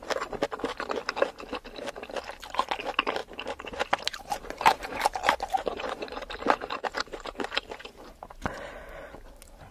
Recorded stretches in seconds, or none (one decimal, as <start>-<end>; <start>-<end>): 0.0-3.2; 7.8-9.7